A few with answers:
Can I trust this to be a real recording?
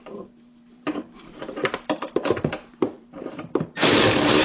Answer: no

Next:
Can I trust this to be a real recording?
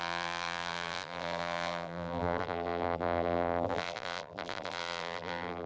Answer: no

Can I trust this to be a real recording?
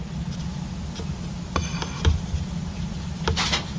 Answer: yes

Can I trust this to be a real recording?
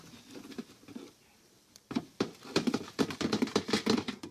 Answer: no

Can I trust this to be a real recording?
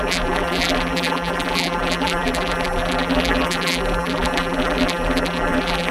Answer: no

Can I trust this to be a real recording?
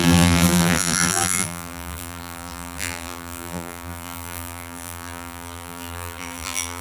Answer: no